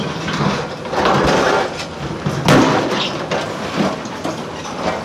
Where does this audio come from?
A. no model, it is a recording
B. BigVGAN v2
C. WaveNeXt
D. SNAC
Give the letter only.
A